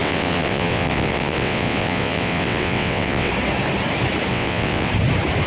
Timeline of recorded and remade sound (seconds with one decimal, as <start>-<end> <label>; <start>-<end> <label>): 0.0-3.3 remade; 3.3-4.3 recorded; 4.3-4.9 remade; 4.9-5.5 recorded